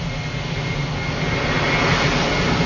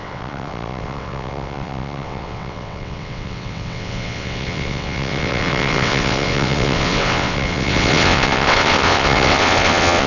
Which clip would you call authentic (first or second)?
first